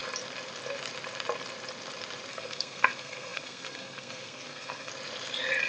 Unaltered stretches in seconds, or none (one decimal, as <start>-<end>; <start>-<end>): 0.0-2.3; 4.9-5.7